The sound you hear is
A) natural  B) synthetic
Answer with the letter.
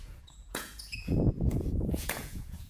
B